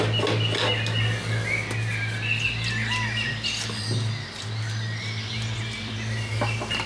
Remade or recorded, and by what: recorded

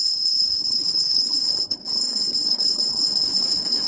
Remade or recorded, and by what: remade, codec, HILCodec